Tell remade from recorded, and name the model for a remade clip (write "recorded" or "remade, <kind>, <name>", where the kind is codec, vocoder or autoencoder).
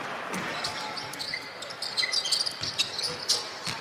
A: recorded